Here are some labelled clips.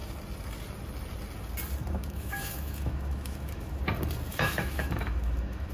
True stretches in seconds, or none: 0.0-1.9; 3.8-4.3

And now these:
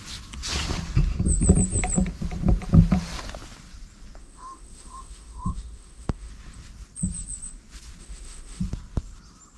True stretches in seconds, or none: 0.0-4.2; 6.3-8.0; 8.6-9.6

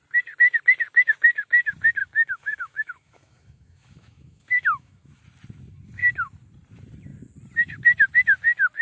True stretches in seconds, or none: 0.0-2.0; 5.2-8.8

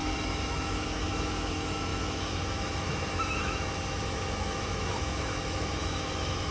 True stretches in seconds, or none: none

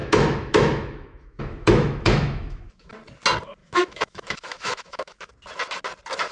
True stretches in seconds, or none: 2.9-3.6; 5.3-6.3

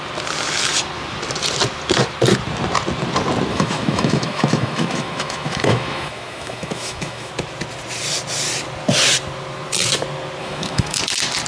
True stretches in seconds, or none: 0.0-3.5; 7.3-10.4; 11.0-11.5

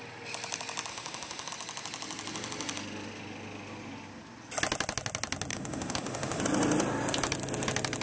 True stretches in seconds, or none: 0.0-0.9; 1.5-5.5; 6.4-8.0

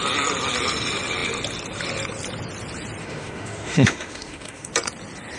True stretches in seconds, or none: 0.0-3.0; 4.7-5.4